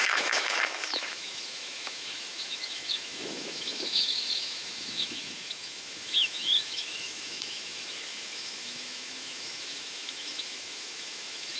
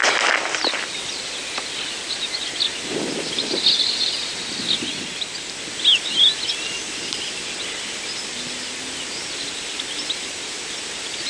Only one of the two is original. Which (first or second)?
second